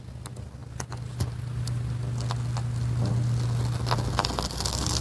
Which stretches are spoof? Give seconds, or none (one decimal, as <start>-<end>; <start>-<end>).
none